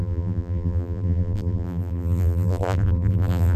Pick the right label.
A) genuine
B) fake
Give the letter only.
B